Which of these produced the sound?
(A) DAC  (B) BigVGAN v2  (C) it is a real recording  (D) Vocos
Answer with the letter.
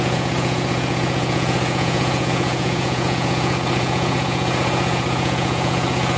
D